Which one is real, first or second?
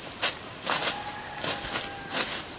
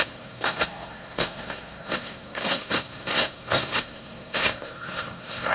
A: first